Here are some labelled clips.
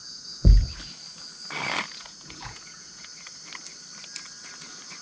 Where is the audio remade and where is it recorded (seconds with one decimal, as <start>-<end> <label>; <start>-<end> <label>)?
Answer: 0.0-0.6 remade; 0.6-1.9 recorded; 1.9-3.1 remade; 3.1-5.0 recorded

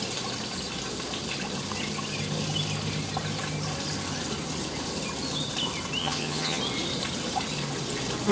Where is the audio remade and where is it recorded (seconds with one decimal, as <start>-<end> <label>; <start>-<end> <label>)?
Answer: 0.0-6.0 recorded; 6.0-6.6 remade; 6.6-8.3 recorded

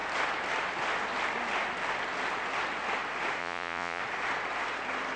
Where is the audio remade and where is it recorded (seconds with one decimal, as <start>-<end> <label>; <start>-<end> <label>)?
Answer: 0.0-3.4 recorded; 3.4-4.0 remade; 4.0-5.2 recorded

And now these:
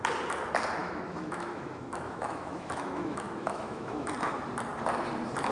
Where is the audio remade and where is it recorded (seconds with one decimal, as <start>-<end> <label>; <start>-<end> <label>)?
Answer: 0.0-0.8 recorded; 0.8-4.1 remade; 4.1-5.5 recorded

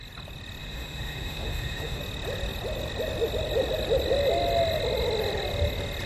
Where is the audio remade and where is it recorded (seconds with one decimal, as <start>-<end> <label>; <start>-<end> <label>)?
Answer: 0.0-0.6 recorded; 0.6-2.0 remade; 2.0-6.1 recorded

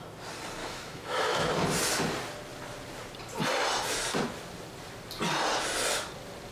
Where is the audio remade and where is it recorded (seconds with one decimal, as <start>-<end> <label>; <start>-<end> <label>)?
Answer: 0.0-0.6 recorded; 0.6-1.5 remade; 1.5-6.5 recorded

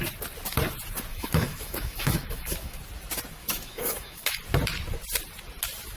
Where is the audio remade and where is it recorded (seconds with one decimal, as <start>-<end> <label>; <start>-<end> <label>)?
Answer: 0.0-1.1 recorded; 1.1-2.8 remade; 2.8-3.4 recorded; 3.4-4.4 remade; 4.4-6.0 recorded